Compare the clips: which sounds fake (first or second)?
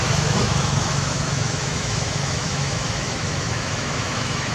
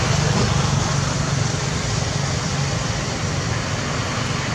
first